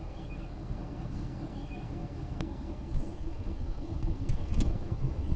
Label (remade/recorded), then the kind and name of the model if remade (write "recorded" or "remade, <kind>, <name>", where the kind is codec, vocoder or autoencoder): remade, codec, SNAC